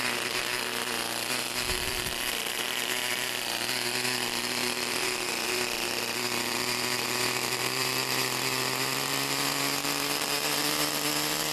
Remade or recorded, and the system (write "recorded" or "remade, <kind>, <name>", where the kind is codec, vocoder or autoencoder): remade, vocoder, BigVGAN v2